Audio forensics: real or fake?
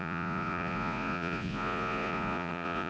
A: fake